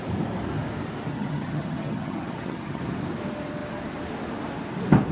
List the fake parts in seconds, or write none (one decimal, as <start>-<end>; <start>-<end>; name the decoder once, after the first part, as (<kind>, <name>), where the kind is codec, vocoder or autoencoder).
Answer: 1.1-2.8 (vocoder, HiFi-GAN)